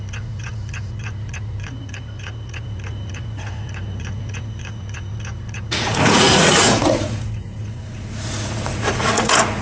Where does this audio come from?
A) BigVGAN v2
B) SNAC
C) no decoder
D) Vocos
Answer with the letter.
D